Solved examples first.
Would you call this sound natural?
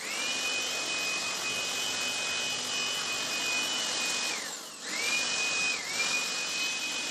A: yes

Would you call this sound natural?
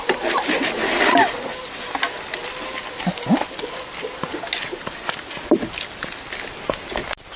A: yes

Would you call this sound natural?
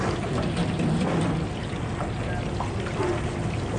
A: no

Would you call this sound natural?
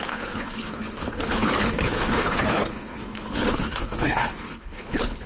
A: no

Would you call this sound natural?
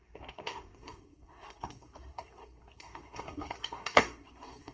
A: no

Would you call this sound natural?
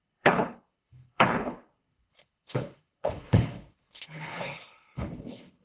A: no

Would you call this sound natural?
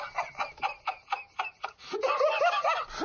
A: yes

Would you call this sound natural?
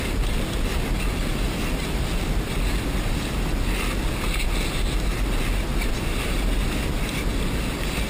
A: yes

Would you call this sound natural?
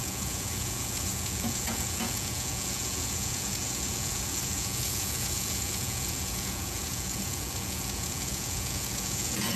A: no